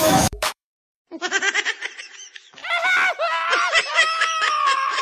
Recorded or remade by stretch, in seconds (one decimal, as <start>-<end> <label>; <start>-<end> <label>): 0.0-1.0 remade; 1.0-2.0 recorded; 2.0-2.6 remade; 2.6-3.9 recorded; 3.9-5.0 remade